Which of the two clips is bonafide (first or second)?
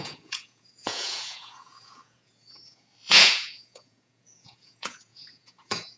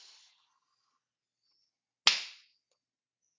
second